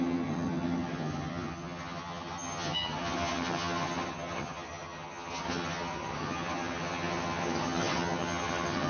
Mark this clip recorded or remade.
remade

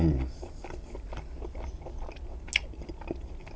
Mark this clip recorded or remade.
recorded